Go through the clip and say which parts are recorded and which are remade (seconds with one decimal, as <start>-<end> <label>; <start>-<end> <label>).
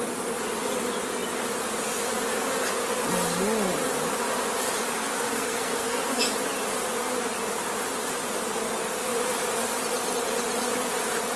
0.0-4.9 recorded; 4.9-6.2 remade; 6.2-11.4 recorded